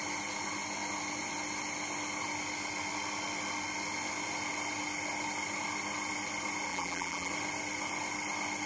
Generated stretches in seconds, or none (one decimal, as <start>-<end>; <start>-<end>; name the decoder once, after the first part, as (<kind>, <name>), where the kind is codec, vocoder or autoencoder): 6.7-7.3 (vocoder, BigVGAN v2)

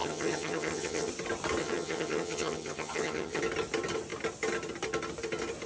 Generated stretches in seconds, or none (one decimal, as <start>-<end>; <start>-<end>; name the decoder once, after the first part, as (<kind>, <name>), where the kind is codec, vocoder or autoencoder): 0.0-1.1 (vocoder, HiFi-GAN); 1.6-3.4

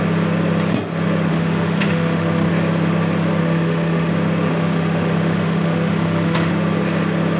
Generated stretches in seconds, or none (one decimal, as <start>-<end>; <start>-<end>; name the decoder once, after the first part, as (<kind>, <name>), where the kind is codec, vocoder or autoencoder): 1.3-2.5 (autoencoder, DAC-VAE); 3.4-4.1; 4.5-6.5

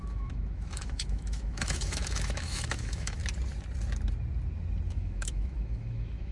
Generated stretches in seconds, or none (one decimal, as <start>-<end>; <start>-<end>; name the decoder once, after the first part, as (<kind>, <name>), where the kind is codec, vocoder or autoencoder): 0.0-3.2 (autoencoder, DAC-VAE); 4.9-6.3